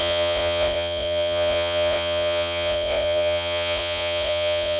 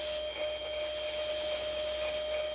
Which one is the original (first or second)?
second